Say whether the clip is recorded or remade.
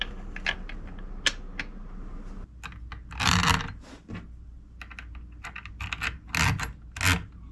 recorded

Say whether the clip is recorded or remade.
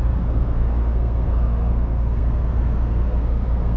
remade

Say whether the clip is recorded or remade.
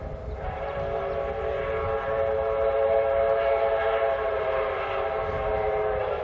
recorded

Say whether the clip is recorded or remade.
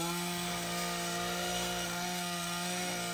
remade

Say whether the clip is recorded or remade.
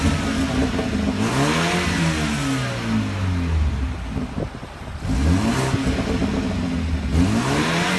recorded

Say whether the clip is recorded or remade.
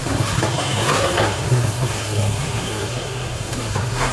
remade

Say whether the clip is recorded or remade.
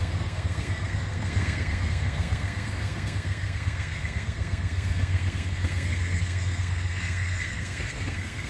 remade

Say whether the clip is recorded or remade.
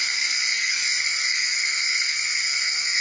remade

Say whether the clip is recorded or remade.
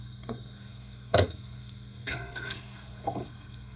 remade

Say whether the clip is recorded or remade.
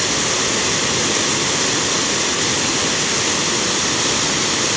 recorded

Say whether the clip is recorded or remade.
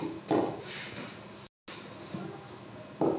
recorded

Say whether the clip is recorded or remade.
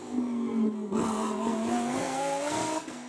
remade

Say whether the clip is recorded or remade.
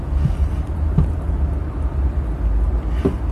recorded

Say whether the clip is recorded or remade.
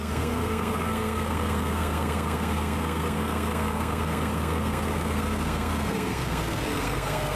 remade